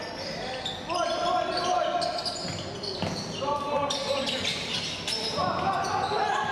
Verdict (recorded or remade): recorded